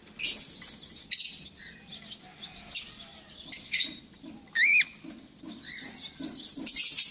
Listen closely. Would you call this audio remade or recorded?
recorded